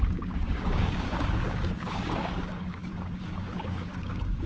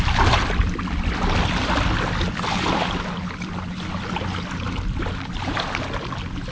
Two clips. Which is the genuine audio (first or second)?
second